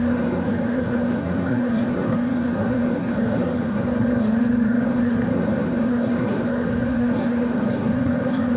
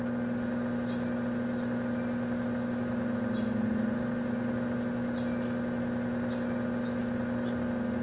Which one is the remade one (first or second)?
first